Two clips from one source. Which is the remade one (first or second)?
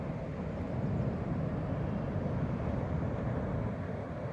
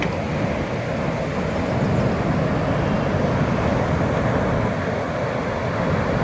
first